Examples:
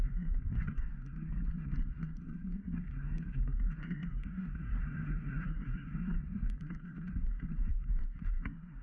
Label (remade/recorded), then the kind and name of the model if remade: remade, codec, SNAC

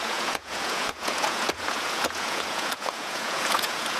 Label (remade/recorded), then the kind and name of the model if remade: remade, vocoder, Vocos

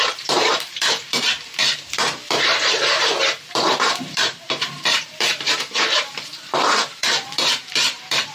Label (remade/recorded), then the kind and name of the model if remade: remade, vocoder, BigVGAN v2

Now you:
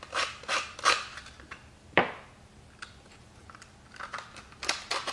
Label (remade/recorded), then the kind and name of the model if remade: recorded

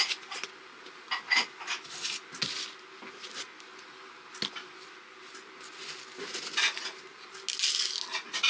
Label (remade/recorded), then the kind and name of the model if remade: recorded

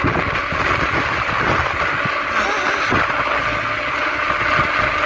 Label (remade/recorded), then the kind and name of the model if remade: recorded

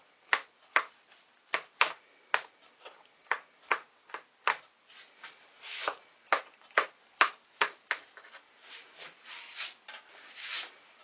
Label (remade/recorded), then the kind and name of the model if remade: recorded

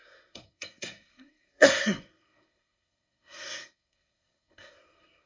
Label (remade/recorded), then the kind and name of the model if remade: remade, codec, SNAC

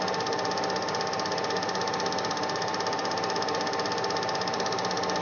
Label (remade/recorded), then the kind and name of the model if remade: remade, vocoder, BigVGAN v2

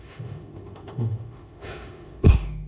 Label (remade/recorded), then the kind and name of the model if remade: remade, autoencoder, DAC-VAE